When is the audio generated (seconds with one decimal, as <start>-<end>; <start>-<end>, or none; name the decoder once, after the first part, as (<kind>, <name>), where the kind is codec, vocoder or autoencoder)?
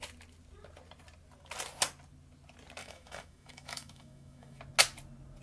2.8-4.6 (autoencoder, DAC-VAE)